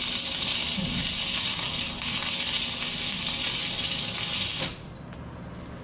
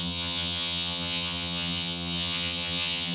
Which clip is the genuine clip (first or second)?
first